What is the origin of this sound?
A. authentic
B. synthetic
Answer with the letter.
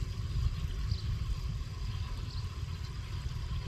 A